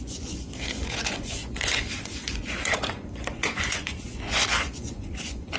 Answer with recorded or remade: remade